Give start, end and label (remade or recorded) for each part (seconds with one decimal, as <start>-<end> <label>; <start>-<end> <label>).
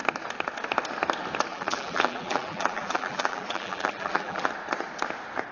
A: 0.0-1.5 recorded; 1.5-4.5 remade; 4.5-5.5 recorded